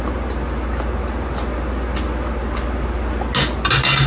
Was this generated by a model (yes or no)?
no